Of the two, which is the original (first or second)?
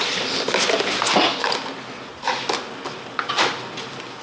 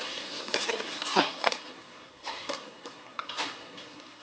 first